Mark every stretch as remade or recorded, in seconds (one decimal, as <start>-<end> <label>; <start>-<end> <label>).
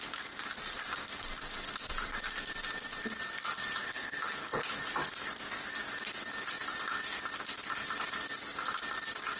0.0-3.8 recorded; 3.8-4.8 remade; 4.8-9.4 recorded